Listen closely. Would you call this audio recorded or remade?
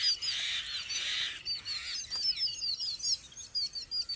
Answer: recorded